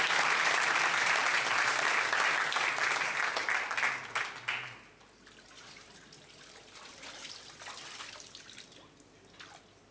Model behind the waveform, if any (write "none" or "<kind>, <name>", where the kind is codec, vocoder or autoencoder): none